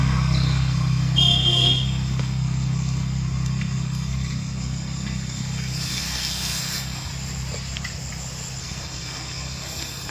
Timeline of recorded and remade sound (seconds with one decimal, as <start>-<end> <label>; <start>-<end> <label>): 0.0-7.1 remade; 7.1-8.6 recorded; 8.6-10.1 remade